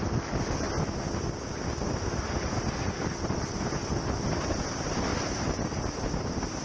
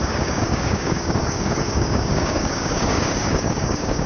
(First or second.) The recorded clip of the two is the first